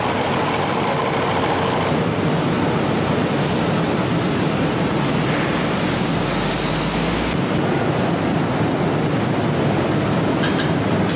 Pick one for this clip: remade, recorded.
recorded